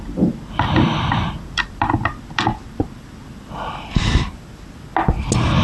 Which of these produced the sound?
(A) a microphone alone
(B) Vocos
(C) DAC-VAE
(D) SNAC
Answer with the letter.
A